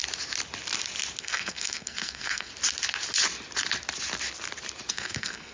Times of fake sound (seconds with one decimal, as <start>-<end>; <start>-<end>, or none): 1.2-2.5; 4.9-5.5